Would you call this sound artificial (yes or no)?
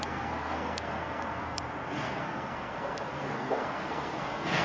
yes